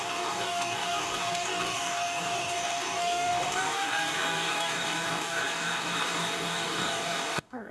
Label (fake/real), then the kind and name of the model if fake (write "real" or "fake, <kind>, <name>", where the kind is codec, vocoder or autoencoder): fake, codec, DAC